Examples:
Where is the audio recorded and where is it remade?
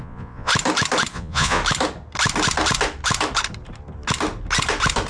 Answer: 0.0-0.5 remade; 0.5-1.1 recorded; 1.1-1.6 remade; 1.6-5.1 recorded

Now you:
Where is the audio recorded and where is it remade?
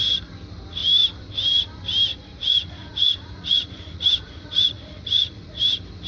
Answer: 0.0-2.1 recorded; 2.1-5.6 remade; 5.6-6.1 recorded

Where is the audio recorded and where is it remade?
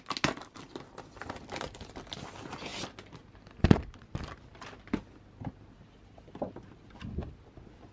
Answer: 0.0-7.9 recorded